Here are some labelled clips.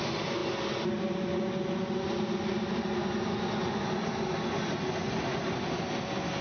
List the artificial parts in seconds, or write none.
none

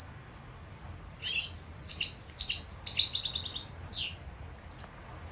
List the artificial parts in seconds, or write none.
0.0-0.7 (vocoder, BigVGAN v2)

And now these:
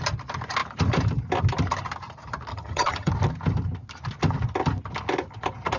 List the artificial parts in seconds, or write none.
2.5-3.1 (vocoder, HiFi-GAN)

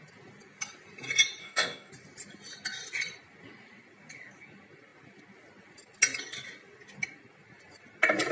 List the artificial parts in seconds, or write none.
1.4-1.9 (codec, DAC)